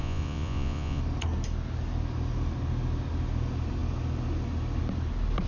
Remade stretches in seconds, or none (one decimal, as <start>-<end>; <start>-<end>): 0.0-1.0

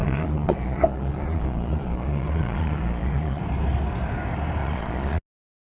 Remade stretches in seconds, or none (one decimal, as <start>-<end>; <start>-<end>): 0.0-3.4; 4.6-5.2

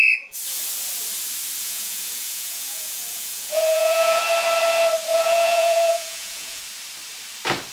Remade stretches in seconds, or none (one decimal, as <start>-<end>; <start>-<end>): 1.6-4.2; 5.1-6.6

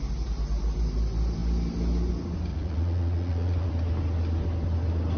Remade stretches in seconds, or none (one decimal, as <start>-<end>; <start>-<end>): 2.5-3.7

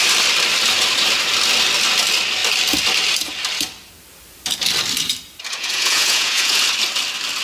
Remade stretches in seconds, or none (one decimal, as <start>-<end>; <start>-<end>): 5.5-6.6

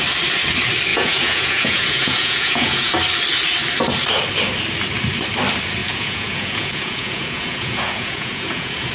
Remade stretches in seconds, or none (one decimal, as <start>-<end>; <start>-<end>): 0.9-2.9; 5.8-8.9

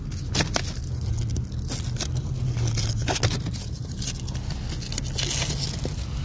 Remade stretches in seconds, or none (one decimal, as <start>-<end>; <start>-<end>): none